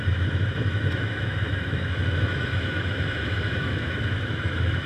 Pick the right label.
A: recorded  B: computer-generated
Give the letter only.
B